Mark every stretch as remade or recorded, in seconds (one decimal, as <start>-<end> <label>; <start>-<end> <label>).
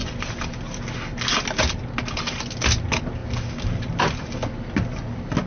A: 0.0-5.5 recorded